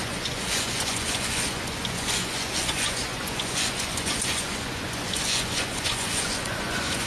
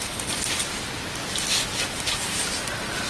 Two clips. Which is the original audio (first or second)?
second